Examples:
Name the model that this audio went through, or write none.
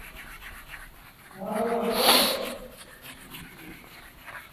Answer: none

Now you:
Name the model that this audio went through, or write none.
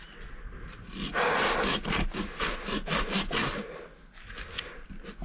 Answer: none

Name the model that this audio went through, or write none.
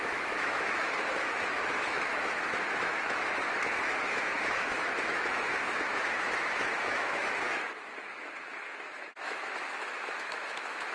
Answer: autoencoder, DAC-VAE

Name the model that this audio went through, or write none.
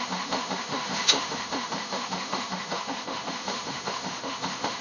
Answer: autoencoder, DAC-VAE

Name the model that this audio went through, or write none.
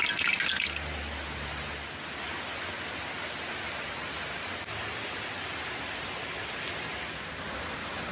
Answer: none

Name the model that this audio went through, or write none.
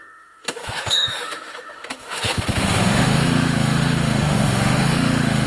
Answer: autoencoder, DAC-VAE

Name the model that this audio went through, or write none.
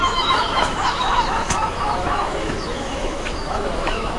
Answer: autoencoder, DAC-VAE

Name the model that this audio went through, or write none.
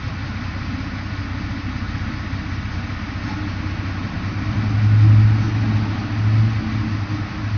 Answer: none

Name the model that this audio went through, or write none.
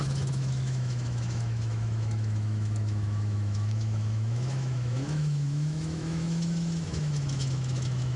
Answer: autoencoder, DAC-VAE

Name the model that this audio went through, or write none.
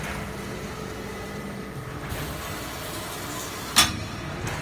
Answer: none